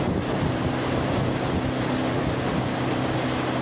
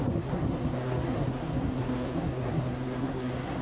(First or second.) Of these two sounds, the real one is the first